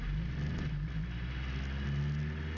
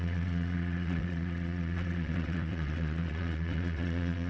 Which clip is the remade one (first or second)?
second